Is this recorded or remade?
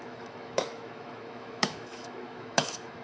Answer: remade